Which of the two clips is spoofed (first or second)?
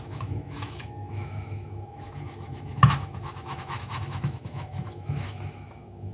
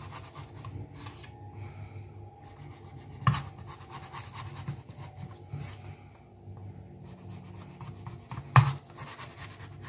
first